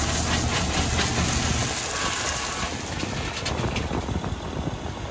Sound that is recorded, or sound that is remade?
recorded